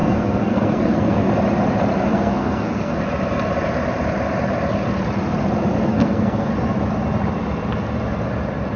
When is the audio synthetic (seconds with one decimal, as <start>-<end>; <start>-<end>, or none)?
0.0-1.3; 2.1-3.0; 5.9-6.5